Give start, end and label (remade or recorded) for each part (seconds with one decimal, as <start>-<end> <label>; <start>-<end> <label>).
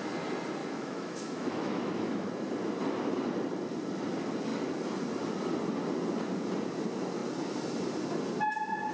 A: 0.0-0.6 recorded; 0.6-2.3 remade; 2.3-8.9 recorded